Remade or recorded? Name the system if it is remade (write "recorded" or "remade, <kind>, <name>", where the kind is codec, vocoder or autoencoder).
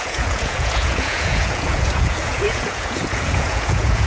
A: remade, vocoder, Vocos